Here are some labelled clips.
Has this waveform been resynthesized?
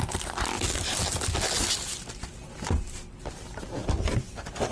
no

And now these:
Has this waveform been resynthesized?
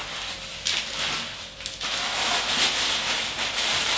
no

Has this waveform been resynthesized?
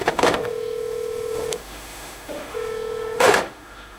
yes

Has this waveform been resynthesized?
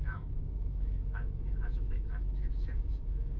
yes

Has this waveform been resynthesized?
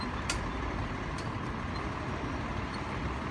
no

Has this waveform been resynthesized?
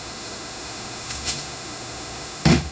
yes